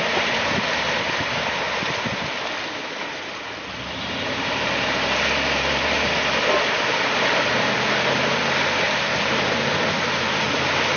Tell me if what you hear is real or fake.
real